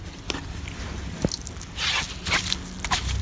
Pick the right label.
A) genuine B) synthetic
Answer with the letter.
A